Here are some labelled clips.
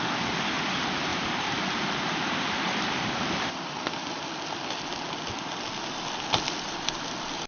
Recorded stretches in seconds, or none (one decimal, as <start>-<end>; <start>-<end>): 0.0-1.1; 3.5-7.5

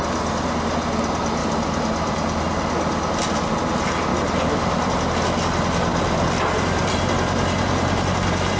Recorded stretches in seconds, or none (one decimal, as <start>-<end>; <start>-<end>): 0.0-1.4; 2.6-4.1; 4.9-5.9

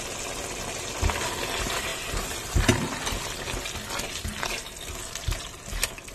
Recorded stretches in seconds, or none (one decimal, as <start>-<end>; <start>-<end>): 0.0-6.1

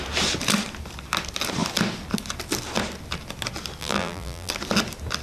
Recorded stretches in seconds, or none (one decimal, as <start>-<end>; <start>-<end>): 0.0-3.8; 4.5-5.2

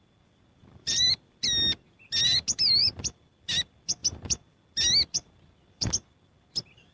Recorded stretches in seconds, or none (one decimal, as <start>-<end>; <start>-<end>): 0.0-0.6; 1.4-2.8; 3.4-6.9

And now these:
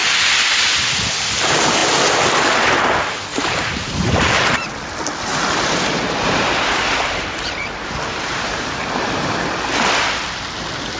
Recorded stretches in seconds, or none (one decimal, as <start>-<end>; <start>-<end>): 0.0-3.3; 4.4-5.3; 9.3-11.0